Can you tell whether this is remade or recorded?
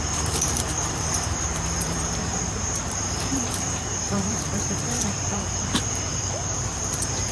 remade